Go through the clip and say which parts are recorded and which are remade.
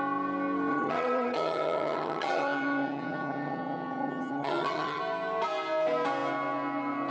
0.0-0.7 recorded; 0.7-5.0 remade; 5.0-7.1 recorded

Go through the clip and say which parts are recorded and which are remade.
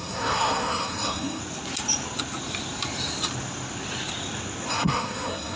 0.0-1.4 remade; 1.4-4.7 recorded; 4.7-5.6 remade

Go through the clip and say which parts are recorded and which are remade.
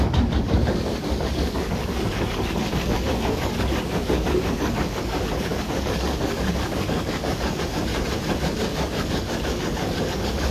0.0-7.9 remade; 7.9-8.4 recorded; 8.4-10.5 remade